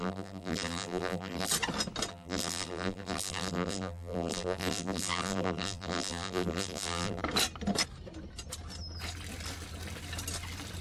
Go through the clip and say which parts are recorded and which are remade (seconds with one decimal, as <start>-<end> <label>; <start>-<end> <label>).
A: 0.0-1.5 remade; 1.5-2.1 recorded; 2.1-7.2 remade; 7.2-10.8 recorded